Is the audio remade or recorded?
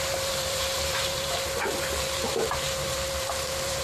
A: remade